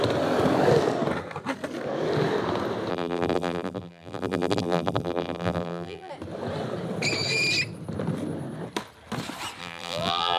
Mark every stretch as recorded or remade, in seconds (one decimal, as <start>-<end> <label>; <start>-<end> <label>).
0.0-2.9 recorded; 2.9-6.1 remade; 6.1-9.6 recorded; 9.6-10.4 remade